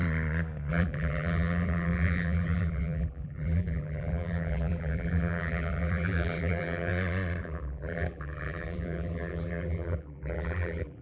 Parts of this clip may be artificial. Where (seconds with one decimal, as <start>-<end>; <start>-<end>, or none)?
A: 0.7-6.9; 7.4-11.0